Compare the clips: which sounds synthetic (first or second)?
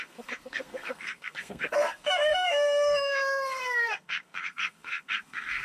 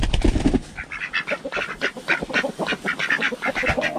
first